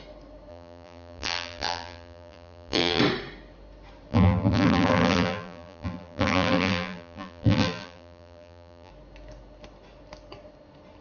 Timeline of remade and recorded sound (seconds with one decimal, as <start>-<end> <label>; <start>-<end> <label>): 0.0-0.5 recorded; 0.5-3.0 remade; 3.0-4.1 recorded; 4.1-8.9 remade; 8.9-11.0 recorded